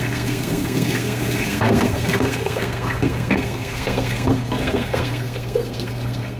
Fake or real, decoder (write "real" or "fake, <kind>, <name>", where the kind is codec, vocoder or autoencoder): fake, codec, SNAC